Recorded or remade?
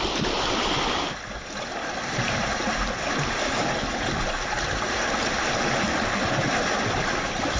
recorded